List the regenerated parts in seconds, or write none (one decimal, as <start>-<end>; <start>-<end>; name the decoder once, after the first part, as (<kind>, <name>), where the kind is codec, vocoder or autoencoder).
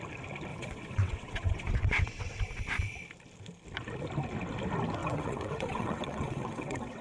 0.5-2.4 (vocoder, WaveNeXt); 5.0-7.0